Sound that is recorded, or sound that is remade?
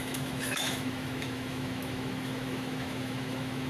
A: remade